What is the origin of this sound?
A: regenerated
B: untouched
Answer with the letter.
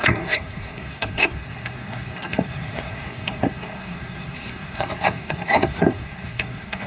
A